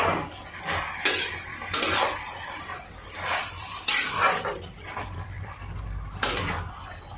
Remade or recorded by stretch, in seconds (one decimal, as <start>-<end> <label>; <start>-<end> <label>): 0.0-1.5 recorded; 1.5-5.8 remade; 5.8-7.2 recorded